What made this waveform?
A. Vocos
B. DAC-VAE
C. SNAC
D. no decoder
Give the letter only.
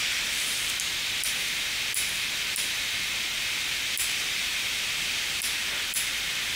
D